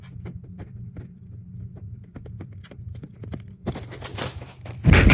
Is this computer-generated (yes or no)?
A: no